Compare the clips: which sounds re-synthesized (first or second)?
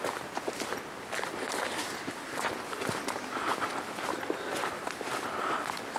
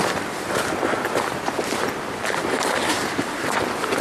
second